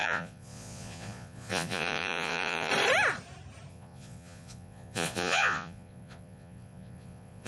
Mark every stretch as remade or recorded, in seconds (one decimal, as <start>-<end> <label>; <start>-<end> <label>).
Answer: 0.0-2.7 remade; 2.7-3.7 recorded; 3.7-7.5 remade